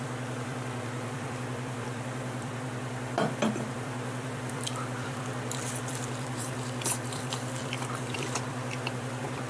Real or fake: fake